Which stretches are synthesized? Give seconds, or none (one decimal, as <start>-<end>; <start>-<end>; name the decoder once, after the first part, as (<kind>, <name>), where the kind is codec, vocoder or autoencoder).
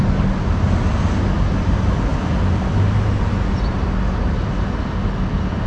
none